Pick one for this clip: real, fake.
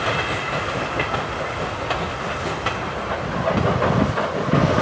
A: real